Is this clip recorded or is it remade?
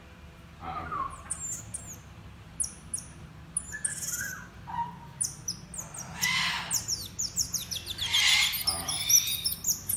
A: recorded